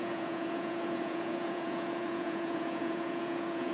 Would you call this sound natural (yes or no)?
no